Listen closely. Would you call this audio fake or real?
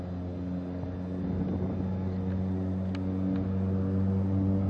real